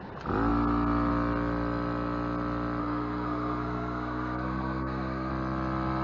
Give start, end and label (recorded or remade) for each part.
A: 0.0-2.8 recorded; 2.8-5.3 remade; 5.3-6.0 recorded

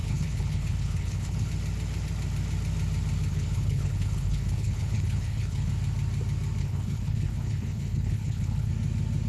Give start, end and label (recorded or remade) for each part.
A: 0.0-1.5 remade; 1.5-3.3 recorded; 3.3-5.7 remade; 5.7-6.6 recorded; 6.6-8.7 remade; 8.7-9.3 recorded

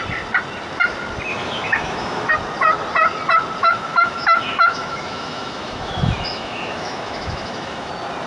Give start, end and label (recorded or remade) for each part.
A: 0.0-1.3 recorded; 1.3-2.3 remade; 2.3-3.6 recorded; 3.6-7.9 remade; 7.9-8.3 recorded